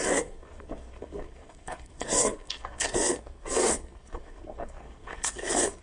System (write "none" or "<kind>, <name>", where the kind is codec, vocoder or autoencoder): codec, SNAC